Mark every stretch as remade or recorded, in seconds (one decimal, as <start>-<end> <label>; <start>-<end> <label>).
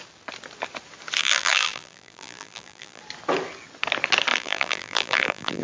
0.0-1.2 recorded; 1.2-3.0 remade; 3.0-4.3 recorded; 4.3-5.6 remade